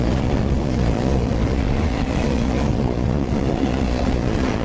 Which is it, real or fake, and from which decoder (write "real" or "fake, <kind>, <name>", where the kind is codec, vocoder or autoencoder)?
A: fake, vocoder, Vocos